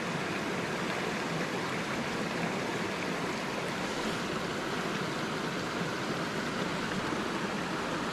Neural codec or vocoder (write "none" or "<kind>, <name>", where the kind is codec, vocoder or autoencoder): none